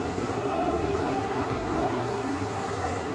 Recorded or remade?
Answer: remade